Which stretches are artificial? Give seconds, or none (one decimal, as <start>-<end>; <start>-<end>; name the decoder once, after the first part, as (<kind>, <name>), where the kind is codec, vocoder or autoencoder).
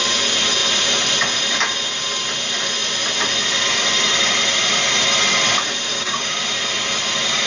5.9-6.4 (codec, DAC)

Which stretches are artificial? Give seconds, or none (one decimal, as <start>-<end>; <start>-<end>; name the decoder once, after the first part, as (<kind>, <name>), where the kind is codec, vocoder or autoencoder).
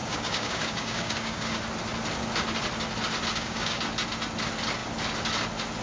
0.0-1.6 (codec, DAC); 3.3-3.8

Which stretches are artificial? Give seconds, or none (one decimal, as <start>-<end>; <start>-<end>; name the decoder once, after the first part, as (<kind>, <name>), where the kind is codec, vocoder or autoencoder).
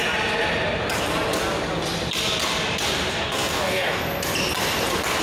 3.1-4.0 (codec, DAC)